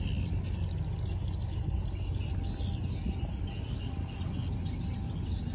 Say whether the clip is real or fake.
real